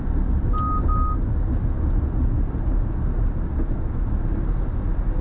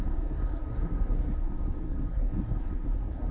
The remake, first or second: second